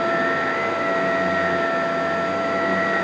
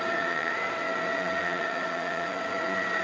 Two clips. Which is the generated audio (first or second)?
second